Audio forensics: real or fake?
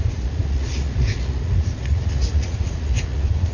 fake